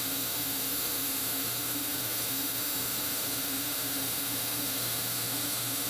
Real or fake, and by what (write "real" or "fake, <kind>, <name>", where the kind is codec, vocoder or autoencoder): fake, autoencoder, DAC-VAE